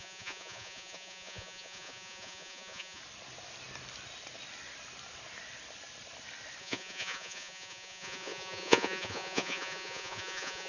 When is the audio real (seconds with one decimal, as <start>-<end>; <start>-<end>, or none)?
3.0-6.6